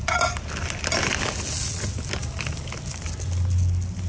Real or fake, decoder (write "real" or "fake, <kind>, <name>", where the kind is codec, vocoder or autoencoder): real